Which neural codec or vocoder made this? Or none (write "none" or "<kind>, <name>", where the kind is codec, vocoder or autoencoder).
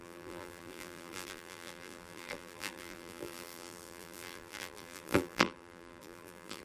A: vocoder, BigVGAN v2